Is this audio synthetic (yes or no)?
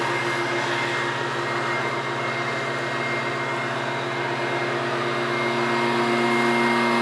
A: no